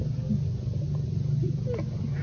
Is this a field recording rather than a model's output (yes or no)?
yes